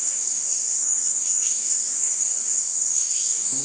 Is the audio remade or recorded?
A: remade